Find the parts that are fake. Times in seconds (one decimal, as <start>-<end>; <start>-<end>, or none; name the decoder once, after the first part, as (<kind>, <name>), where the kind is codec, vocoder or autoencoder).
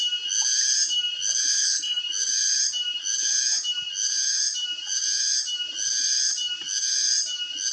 1.5-2.0 (codec, SNAC)